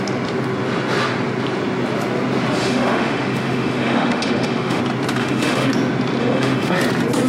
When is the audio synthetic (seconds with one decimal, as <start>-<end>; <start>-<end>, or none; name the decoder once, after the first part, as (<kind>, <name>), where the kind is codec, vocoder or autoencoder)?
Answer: 2.6-4.8 (autoencoder, DAC-VAE); 5.2-5.7; 6.2-6.7